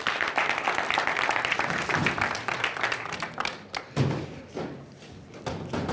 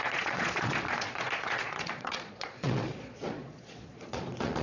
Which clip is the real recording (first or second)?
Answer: first